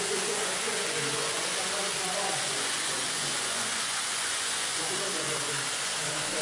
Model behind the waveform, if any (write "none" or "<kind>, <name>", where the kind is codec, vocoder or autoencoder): vocoder, Vocos